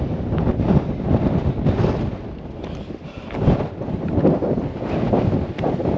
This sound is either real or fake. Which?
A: real